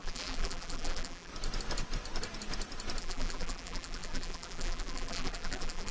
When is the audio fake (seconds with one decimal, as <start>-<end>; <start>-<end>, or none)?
0.0-1.3; 3.0-5.9